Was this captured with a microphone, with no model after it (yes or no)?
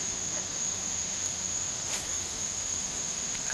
no